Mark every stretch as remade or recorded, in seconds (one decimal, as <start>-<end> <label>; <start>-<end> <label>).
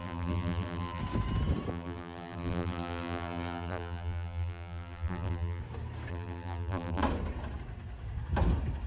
0.0-1.0 remade; 1.0-1.7 recorded; 1.7-5.6 remade; 5.6-6.1 recorded; 6.1-7.0 remade; 7.0-8.9 recorded